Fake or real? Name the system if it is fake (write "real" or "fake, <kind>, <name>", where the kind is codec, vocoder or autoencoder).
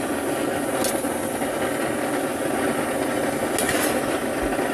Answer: real